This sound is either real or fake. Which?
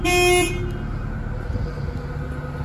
real